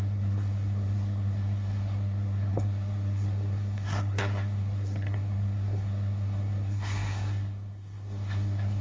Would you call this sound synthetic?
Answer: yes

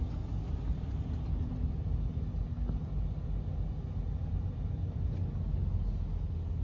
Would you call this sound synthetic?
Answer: no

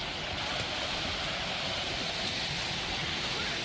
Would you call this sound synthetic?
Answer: no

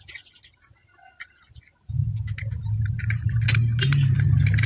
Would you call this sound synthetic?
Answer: no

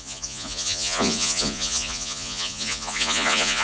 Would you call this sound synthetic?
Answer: yes